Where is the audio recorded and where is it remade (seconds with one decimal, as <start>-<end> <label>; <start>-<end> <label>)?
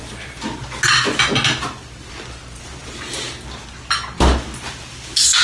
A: 0.0-5.4 recorded